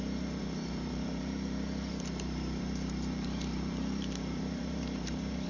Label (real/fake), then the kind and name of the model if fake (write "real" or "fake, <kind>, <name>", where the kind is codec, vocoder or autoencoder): fake, vocoder, BigVGAN v2